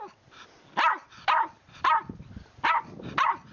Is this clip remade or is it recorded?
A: recorded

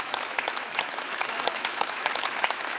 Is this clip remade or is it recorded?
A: remade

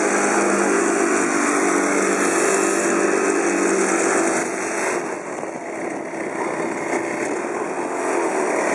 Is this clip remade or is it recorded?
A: recorded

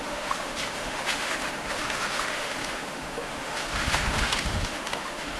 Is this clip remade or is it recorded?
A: remade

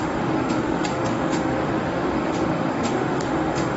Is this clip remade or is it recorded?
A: remade